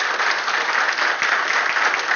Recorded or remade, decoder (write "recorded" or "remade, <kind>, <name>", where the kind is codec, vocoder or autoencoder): recorded